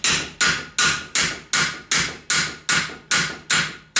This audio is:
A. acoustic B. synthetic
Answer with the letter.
A